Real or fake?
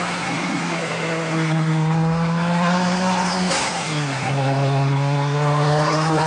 fake